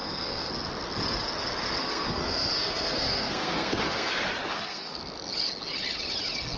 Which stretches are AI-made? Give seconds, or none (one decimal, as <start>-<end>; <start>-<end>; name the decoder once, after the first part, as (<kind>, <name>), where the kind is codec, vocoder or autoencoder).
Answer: 0.0-0.5 (codec, SNAC); 1.8-4.1; 4.5-5.0